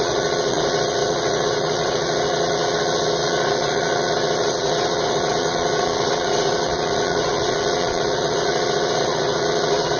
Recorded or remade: remade